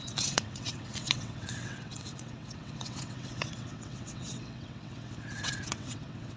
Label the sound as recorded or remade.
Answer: remade